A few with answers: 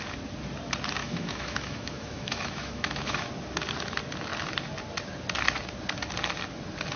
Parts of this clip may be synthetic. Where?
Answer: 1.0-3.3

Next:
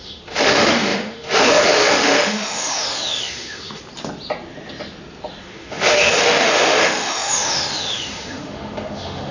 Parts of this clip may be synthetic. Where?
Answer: 0.0-3.8; 5.4-9.3

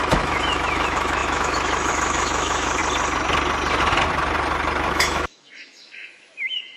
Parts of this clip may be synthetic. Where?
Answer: 0.0-2.8; 4.9-6.8

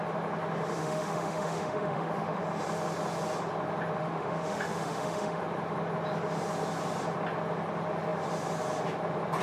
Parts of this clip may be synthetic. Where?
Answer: 0.8-2.4; 4.0-5.4

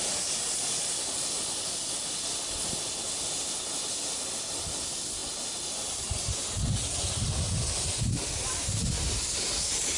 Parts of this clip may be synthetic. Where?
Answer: none